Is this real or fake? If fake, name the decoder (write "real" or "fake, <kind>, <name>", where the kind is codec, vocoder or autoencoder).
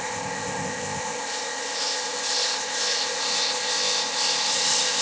fake, codec, ZipCodec